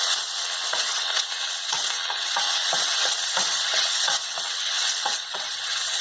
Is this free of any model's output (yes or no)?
no